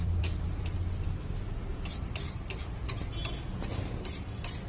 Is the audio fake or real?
fake